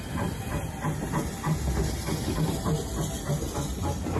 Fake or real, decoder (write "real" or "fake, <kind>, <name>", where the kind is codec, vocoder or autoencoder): real